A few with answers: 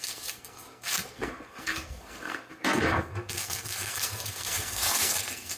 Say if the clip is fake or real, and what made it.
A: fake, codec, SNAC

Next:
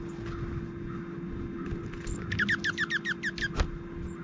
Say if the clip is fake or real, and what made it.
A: real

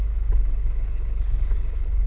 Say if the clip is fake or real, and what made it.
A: fake, codec, HILCodec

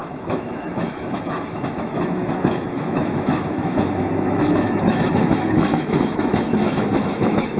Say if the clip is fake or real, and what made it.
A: fake, autoencoder, DAC-VAE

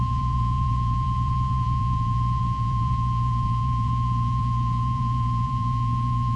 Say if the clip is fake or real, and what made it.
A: fake, vocoder, Vocos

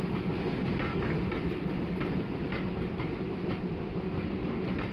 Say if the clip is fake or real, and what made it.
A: real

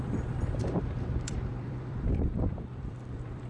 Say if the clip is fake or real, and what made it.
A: fake, vocoder, BigVGAN v2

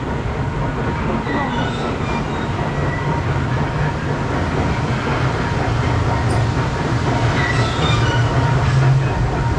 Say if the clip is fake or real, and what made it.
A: real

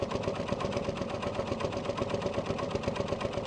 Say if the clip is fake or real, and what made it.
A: real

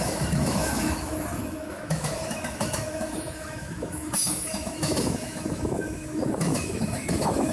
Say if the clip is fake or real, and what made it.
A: fake, autoencoder, DAC-VAE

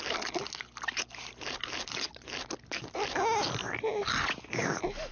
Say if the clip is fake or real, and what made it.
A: real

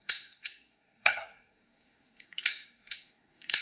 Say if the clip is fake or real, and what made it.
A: fake, codec, SNAC